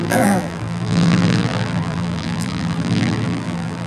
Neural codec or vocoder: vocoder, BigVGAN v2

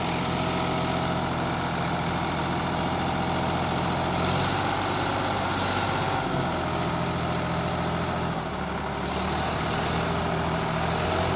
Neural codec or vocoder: none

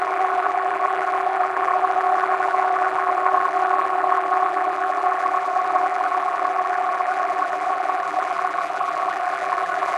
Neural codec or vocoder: vocoder, BigVGAN v2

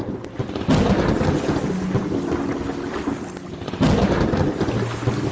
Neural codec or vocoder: none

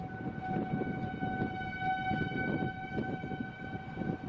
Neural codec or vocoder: none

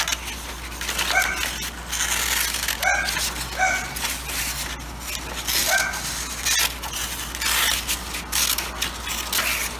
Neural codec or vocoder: none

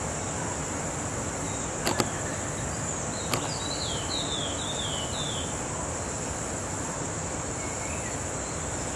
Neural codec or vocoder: none